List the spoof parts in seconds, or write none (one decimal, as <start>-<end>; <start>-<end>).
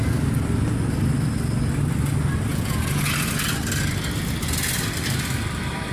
2.5-3.0